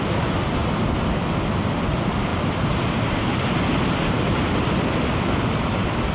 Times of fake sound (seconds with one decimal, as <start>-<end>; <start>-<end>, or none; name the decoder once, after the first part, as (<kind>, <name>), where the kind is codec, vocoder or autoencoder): none